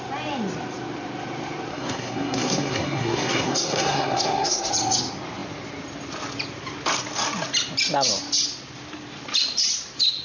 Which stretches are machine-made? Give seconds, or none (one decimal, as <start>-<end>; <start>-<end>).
1.7-4.7